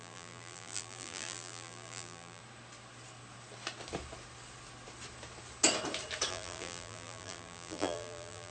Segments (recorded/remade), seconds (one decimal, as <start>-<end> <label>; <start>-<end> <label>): 0.0-2.4 remade; 2.4-6.3 recorded; 6.3-8.5 remade